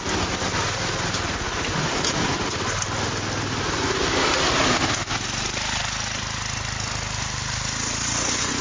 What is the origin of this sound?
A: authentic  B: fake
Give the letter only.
A